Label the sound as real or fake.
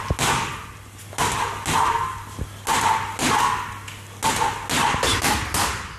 real